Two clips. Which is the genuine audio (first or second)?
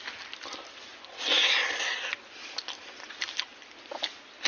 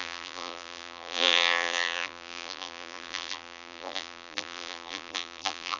first